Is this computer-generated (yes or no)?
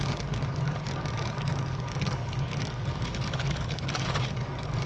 yes